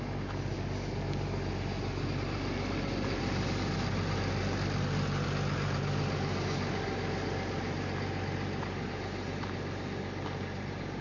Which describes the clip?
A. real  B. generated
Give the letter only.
A